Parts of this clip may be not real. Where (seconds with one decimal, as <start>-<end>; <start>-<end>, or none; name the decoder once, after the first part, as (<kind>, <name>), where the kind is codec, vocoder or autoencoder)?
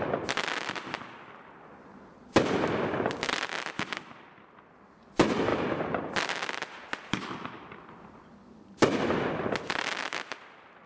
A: none